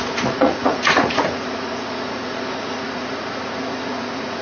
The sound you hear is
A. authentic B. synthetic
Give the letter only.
B